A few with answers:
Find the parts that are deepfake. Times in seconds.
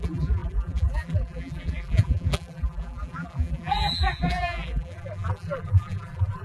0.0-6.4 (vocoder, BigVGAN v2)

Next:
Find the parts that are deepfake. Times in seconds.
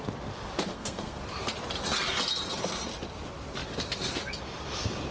0.7-1.2 (codec, SNAC)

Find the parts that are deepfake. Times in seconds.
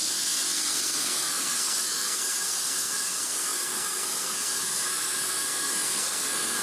0.0-6.6 (codec, SNAC)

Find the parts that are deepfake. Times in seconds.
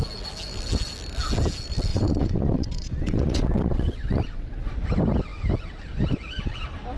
1.9-4.7 (vocoder, WaveNeXt)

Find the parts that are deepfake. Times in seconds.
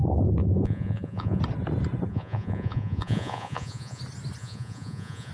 0.4-1.4 (vocoder, Vocos); 2.1-4.0; 4.4-5.3